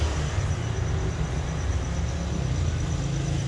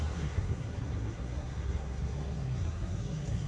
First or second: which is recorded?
first